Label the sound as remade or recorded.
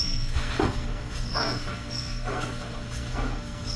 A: remade